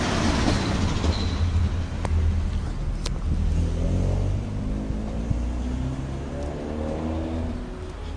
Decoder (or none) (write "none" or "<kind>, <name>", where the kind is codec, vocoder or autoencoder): none